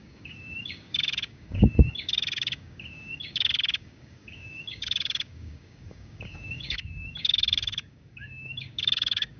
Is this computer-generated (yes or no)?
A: yes